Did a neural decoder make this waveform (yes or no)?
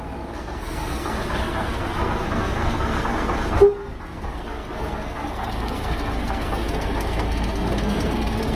yes